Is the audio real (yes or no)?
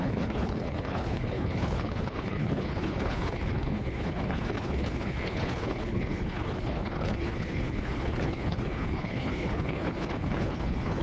no